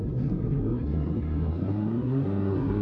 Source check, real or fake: fake